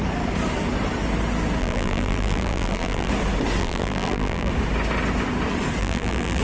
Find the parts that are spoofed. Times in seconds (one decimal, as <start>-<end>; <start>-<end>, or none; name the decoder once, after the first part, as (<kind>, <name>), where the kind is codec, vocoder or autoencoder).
1.6-3.1 (vocoder, BigVGAN v2); 3.6-4.5; 5.8-6.4